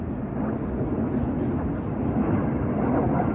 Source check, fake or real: real